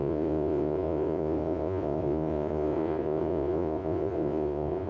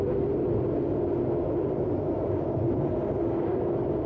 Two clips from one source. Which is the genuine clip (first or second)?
second